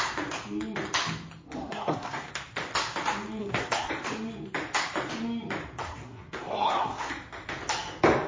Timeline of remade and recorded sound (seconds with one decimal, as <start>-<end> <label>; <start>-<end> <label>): 0.0-1.6 recorded; 1.6-2.3 remade; 2.3-3.4 recorded; 3.4-3.9 remade; 3.9-5.8 recorded; 5.8-7.1 remade; 7.1-8.3 recorded